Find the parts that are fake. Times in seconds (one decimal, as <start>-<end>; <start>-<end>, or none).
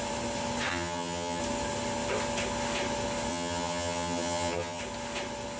0.7-1.4; 3.3-4.8